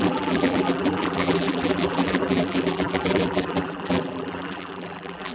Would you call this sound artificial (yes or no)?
yes